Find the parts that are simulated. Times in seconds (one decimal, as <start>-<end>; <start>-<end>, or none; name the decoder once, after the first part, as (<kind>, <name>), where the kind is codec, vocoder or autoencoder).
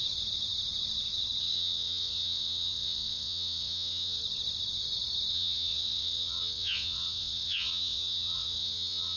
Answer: 1.4-4.2 (vocoder, WaveNeXt); 5.3-9.2